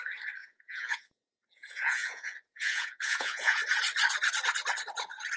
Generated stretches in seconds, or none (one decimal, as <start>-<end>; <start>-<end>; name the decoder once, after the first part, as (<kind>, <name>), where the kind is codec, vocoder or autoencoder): 0.4-3.6 (vocoder, Vocos)